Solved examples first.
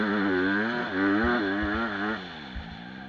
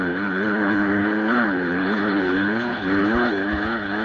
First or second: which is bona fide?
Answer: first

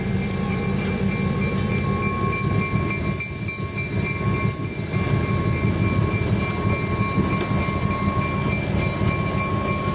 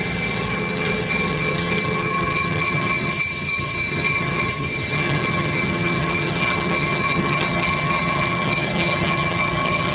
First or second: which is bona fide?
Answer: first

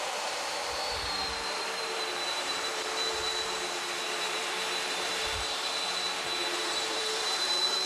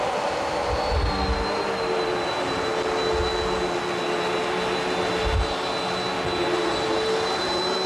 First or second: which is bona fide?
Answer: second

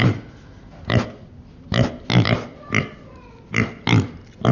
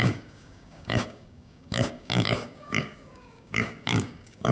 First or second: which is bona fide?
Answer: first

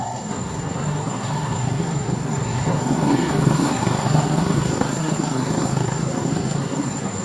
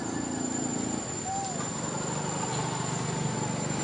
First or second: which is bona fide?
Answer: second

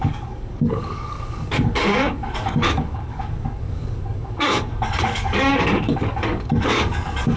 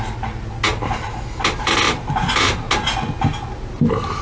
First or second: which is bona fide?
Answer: second